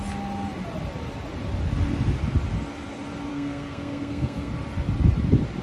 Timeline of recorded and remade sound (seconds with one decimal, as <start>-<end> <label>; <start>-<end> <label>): 0.0-3.3 recorded; 3.3-4.5 remade; 4.5-5.6 recorded